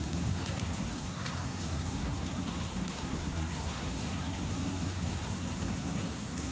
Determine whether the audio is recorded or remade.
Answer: remade